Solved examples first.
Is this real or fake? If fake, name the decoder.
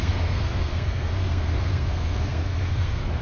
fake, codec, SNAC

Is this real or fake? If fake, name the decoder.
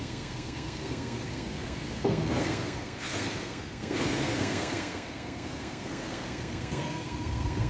fake, codec, SNAC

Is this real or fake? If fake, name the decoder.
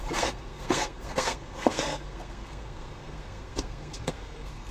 fake, codec, SNAC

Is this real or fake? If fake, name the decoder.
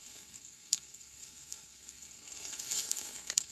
fake, codec, SNAC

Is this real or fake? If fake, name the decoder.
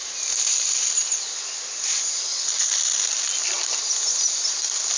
real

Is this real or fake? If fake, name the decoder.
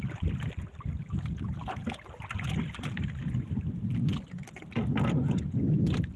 real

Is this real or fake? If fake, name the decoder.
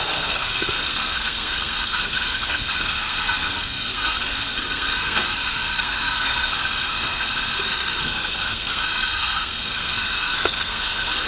fake, codec, SNAC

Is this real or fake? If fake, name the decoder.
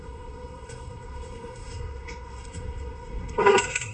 fake, codec, SNAC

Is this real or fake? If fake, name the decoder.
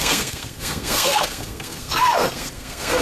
fake, codec, SNAC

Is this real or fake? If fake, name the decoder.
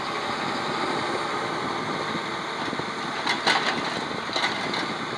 real